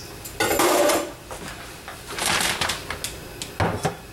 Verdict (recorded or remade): recorded